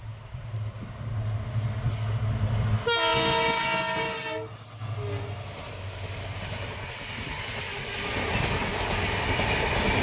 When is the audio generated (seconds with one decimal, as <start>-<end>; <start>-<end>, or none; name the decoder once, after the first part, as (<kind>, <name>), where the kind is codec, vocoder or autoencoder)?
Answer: none